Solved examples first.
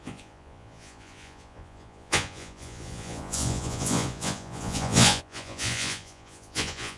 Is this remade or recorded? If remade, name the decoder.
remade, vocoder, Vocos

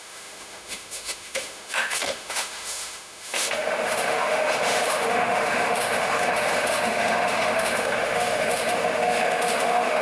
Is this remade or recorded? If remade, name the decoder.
remade, autoencoder, DAC-VAE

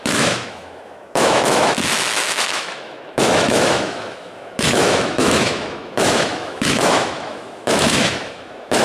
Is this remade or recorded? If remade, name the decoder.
remade, autoencoder, DAC-VAE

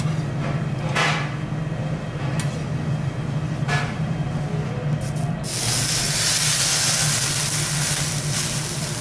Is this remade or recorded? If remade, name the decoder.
recorded